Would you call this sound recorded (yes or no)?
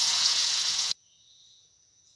no